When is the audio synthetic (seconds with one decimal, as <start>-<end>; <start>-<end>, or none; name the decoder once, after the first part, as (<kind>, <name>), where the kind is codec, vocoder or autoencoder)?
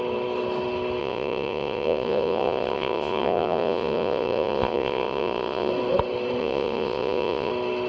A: 1.0-5.7 (vocoder, Vocos); 6.4-7.5